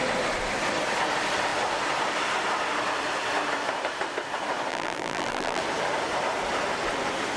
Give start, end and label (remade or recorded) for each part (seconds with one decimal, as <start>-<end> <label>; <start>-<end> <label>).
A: 0.0-4.7 recorded; 4.7-5.6 remade; 5.6-7.4 recorded